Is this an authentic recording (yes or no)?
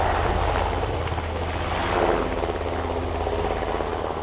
yes